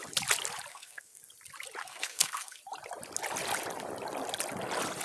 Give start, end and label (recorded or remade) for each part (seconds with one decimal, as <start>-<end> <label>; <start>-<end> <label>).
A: 0.0-0.7 recorded; 0.7-1.2 remade; 1.2-1.8 recorded; 1.8-2.6 remade; 2.6-5.0 recorded